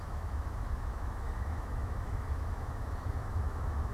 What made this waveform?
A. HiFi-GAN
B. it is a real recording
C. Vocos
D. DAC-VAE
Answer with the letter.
D